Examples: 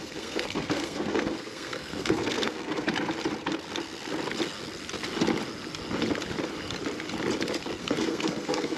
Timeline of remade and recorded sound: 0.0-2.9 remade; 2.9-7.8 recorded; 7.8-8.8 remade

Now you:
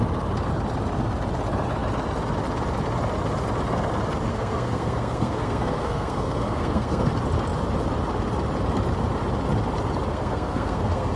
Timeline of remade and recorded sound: 0.0-4.3 recorded; 4.3-7.1 remade; 7.1-10.1 recorded; 10.1-11.2 remade

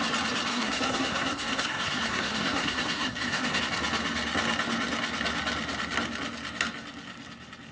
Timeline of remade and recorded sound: 0.0-0.5 recorded; 0.5-3.6 remade; 3.6-7.7 recorded

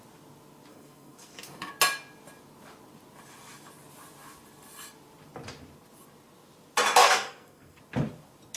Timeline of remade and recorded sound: 0.0-0.7 recorded; 0.7-1.7 remade; 1.7-7.0 recorded; 7.0-7.8 remade; 7.8-8.6 recorded